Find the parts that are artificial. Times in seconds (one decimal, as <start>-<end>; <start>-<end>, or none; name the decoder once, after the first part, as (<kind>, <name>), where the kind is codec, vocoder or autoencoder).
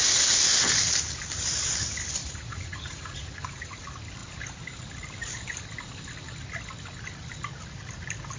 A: 2.2-3.8 (vocoder, Vocos)